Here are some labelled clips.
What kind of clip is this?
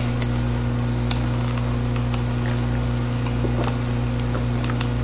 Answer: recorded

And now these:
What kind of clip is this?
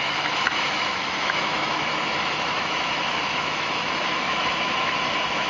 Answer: remade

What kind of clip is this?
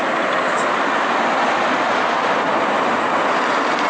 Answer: recorded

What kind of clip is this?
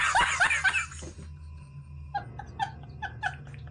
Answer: recorded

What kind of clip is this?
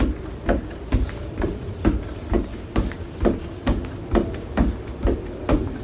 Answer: recorded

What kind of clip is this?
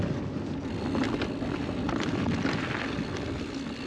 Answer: recorded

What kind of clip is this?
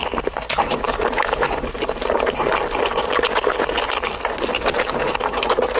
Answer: recorded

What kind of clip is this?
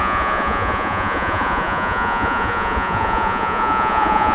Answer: remade